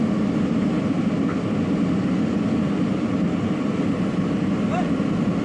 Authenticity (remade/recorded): recorded